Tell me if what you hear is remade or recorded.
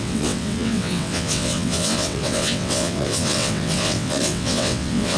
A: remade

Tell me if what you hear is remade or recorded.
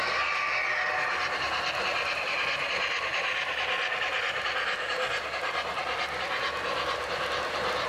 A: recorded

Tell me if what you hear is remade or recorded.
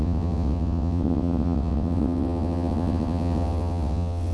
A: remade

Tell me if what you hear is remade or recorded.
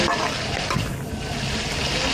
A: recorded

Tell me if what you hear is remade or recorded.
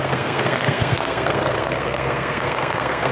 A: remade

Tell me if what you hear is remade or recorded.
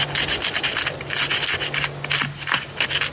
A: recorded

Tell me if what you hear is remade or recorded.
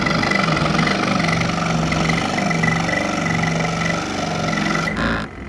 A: recorded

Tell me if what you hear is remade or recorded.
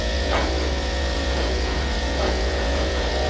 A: remade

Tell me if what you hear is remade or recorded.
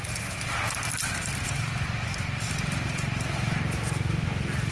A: recorded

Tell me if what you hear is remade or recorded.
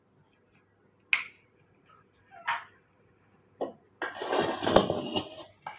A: recorded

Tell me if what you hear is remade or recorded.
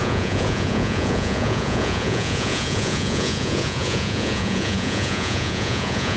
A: remade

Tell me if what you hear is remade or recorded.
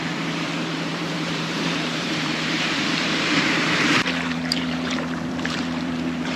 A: remade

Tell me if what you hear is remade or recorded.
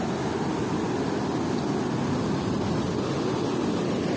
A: recorded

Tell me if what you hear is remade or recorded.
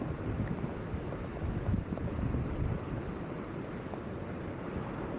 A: recorded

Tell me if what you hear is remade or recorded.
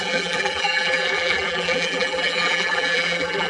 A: remade